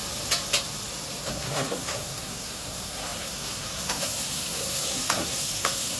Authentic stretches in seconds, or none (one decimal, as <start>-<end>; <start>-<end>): 0.0-1.3